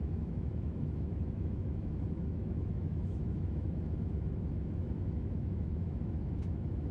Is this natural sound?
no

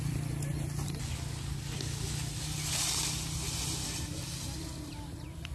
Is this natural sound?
yes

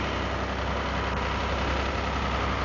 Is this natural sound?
yes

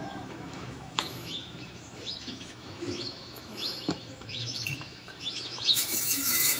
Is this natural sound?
no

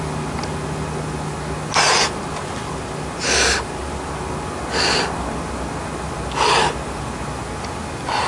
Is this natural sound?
yes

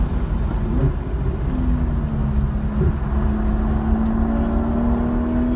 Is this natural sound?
yes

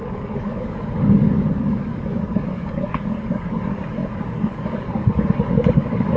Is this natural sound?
no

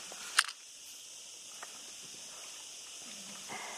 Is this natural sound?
yes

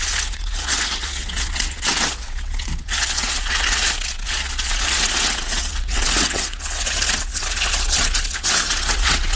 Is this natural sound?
no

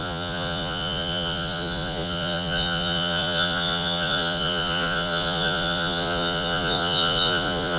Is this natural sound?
no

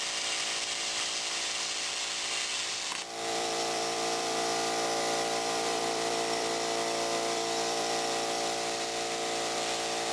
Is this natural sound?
no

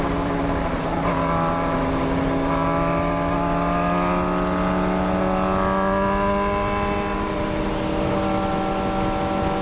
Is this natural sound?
yes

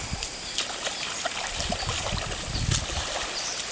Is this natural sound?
yes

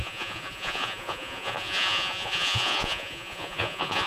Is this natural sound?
no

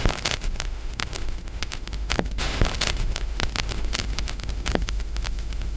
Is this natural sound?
no